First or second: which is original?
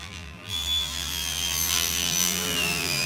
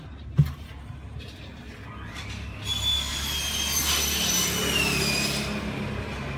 second